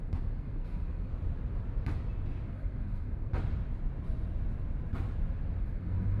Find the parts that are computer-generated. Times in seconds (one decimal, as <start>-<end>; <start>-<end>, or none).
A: 0.0-1.1; 2.5-3.3; 5.6-6.2